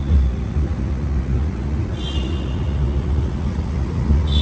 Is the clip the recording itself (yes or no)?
no